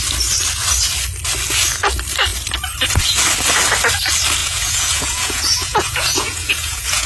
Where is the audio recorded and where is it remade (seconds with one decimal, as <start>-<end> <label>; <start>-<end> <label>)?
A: 0.0-4.4 recorded; 4.4-7.1 remade